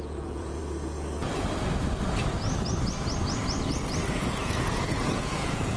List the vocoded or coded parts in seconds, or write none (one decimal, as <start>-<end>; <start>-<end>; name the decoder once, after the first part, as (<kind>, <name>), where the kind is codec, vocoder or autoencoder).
0.0-0.6 (vocoder, Vocos); 4.1-5.8